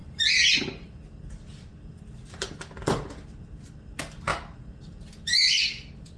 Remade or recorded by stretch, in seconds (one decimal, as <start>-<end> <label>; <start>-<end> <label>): 0.0-1.2 remade; 1.2-6.2 recorded